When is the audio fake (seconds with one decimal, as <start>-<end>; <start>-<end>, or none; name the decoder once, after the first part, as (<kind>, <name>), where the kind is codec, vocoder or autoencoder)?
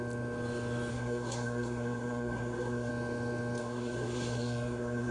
0.9-2.9 (codec, SNAC); 3.6-5.1